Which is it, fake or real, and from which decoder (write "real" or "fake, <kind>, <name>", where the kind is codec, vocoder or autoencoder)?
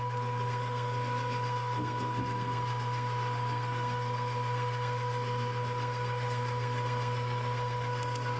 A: fake, codec, SNAC